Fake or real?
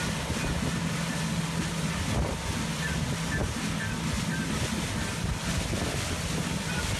real